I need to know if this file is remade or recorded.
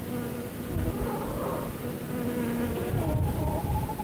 recorded